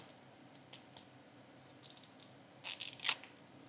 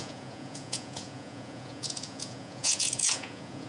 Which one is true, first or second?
first